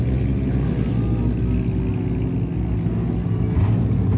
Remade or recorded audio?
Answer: recorded